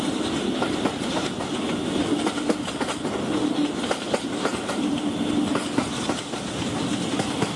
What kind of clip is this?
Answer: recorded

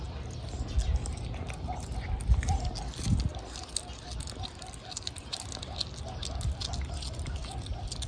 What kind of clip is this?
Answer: recorded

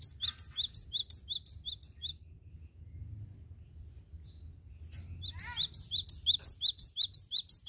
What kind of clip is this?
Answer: recorded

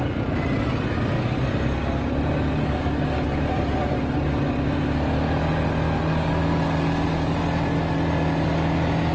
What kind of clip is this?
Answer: recorded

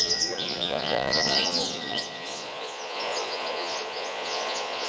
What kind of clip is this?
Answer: remade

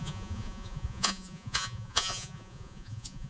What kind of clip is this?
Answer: remade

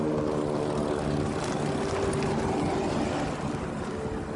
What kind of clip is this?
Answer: recorded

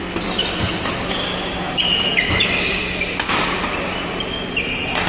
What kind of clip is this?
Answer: recorded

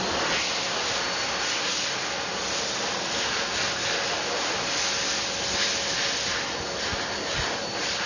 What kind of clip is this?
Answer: recorded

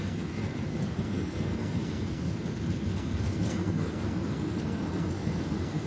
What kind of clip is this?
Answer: remade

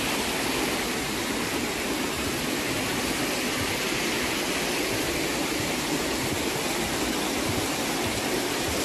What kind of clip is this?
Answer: recorded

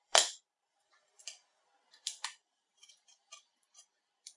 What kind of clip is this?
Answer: remade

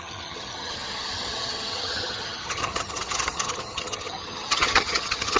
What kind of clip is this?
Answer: remade